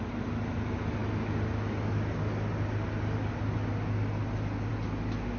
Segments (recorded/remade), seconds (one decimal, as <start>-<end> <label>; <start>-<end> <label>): 0.0-5.4 recorded